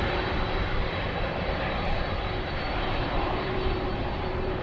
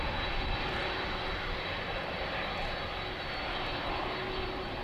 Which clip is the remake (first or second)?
first